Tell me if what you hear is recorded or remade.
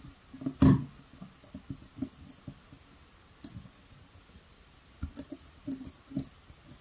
recorded